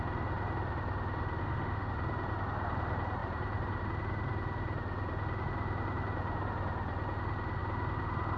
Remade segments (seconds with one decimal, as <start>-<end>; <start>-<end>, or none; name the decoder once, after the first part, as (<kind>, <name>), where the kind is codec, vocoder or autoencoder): 1.4-1.9 (autoencoder, DAC-VAE)